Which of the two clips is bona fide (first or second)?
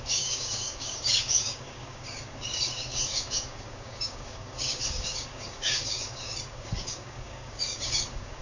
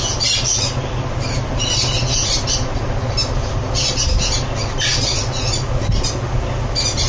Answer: second